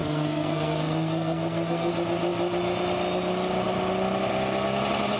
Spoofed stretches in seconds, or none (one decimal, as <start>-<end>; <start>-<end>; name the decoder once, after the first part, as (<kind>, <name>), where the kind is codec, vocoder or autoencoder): 0.0-1.9 (codec, SNAC)